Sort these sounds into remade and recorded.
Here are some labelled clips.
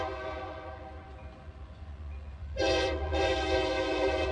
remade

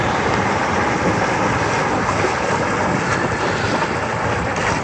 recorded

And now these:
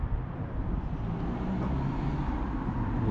recorded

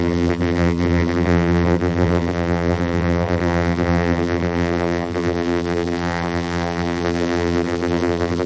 remade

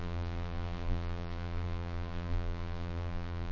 remade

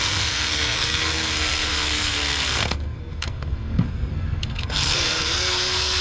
remade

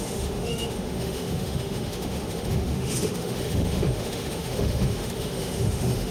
remade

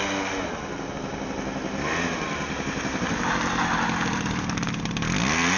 recorded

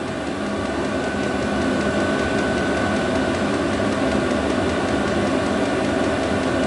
recorded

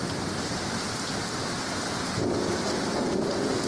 recorded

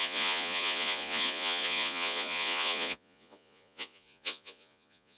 remade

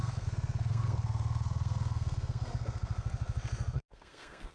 remade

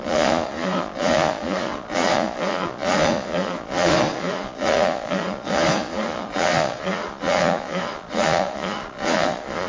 remade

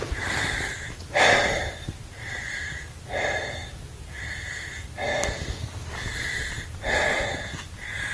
recorded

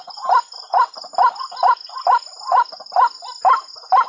recorded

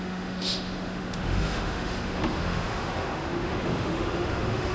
remade